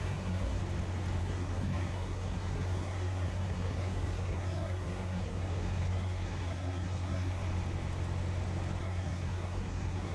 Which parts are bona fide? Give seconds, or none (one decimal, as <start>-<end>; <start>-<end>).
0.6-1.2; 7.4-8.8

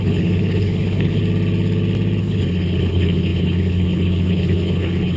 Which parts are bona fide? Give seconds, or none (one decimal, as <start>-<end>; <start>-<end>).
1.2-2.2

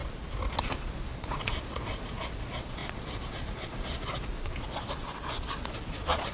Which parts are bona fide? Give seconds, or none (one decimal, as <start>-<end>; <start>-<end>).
0.0-0.5

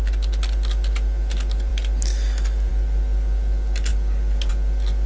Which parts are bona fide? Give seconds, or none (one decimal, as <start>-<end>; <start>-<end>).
0.0-5.1

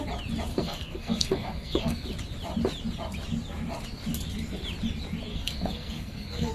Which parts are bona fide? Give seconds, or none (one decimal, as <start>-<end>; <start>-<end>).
0.0-0.5; 2.1-5.3

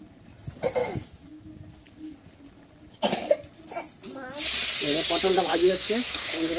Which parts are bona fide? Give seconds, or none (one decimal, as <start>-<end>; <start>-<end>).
0.0-0.8; 1.7-5.5

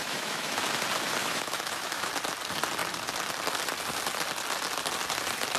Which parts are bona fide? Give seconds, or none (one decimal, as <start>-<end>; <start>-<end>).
0.6-1.2; 2.1-5.6